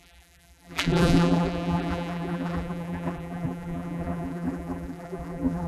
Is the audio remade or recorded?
remade